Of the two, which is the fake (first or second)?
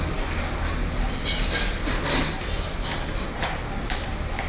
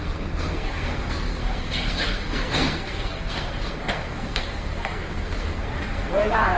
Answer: second